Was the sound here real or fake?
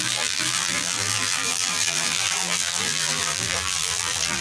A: fake